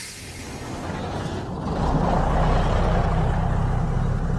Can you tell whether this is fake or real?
real